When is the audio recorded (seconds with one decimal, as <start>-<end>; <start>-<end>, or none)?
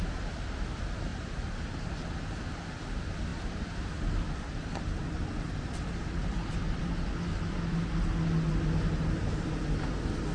0.0-10.3